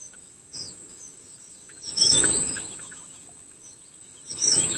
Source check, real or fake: fake